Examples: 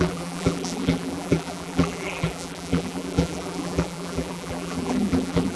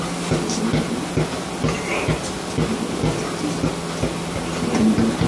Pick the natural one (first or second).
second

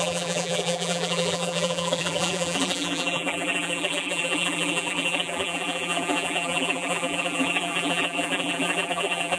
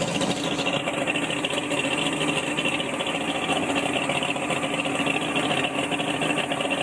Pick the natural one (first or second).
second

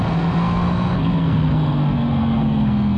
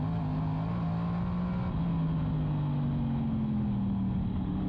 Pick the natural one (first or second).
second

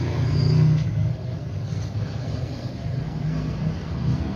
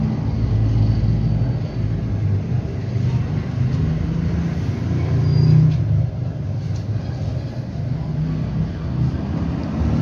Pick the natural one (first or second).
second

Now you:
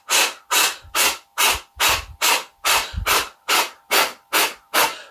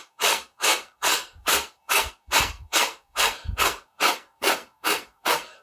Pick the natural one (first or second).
first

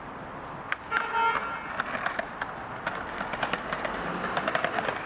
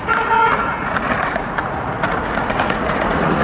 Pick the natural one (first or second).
first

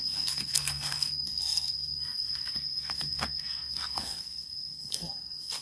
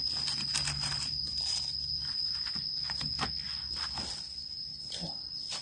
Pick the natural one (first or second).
second